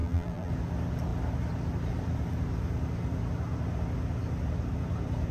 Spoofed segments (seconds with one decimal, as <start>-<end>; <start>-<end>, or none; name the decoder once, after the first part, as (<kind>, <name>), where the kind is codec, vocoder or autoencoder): 0.0-0.5 (vocoder, BigVGAN v2)